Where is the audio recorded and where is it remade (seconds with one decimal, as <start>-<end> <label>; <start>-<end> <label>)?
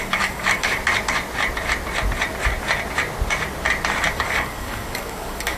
0.0-0.8 remade; 0.8-4.1 recorded; 4.1-5.6 remade